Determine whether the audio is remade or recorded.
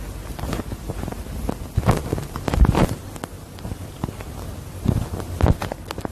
recorded